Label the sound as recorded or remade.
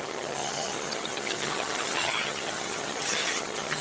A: remade